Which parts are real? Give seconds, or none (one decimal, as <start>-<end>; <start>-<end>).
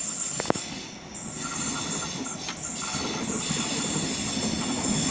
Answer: 0.0-2.9; 3.7-5.1